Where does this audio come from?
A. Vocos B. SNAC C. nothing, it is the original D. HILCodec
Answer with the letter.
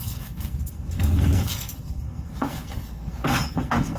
B